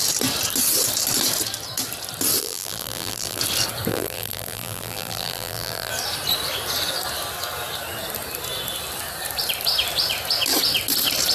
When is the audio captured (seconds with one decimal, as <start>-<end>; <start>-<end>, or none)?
0.0-2.4; 3.4-3.9; 5.9-11.3